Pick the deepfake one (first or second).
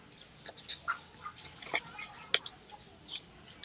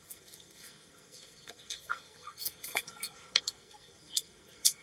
second